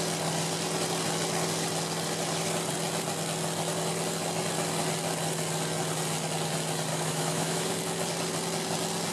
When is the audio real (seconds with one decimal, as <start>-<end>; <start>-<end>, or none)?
0.0-6.9; 7.7-9.1